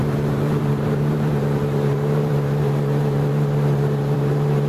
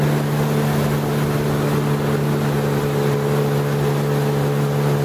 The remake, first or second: first